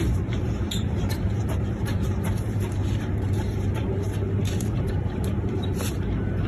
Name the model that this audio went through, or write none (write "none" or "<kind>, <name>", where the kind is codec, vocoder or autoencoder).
vocoder, BigVGAN v2